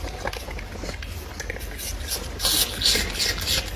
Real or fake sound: real